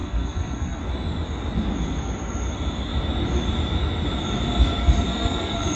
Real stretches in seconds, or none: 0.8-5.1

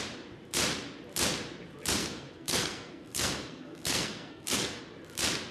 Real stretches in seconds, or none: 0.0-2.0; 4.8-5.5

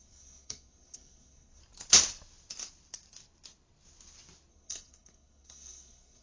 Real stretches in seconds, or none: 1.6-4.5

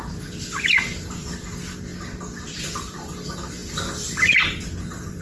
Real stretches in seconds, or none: 0.0-5.2

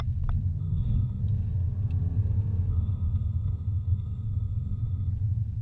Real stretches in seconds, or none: 0.0-0.6; 1.2-2.7; 5.1-5.6

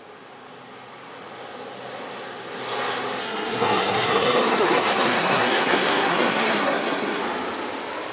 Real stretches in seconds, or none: 0.0-3.2; 7.2-8.1